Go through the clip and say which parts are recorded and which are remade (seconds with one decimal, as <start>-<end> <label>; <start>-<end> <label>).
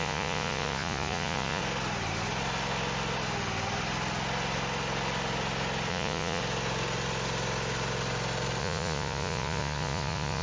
0.0-1.6 remade; 1.6-5.9 recorded; 5.9-6.4 remade; 6.4-8.6 recorded; 8.6-10.4 remade